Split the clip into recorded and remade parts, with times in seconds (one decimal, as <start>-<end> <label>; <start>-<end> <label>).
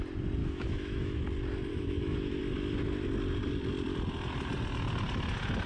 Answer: 0.0-0.4 recorded; 0.4-1.2 remade; 1.2-1.7 recorded; 1.7-2.4 remade; 2.4-5.7 recorded